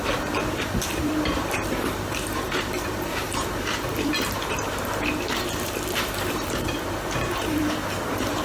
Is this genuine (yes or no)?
no